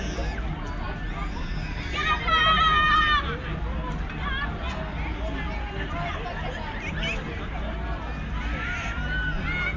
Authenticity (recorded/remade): recorded